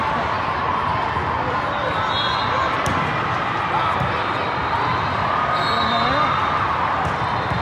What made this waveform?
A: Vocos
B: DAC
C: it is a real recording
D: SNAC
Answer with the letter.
C